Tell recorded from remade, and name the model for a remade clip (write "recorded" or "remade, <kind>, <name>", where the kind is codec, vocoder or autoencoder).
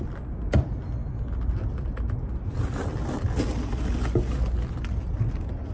recorded